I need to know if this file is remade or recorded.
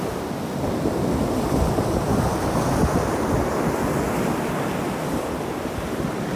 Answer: recorded